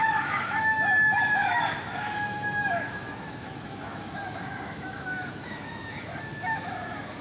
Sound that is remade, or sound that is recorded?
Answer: remade